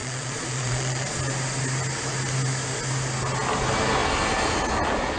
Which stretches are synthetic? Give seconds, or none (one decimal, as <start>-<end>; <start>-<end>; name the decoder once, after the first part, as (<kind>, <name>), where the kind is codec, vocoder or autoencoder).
0.0-1.2 (vocoder, Vocos)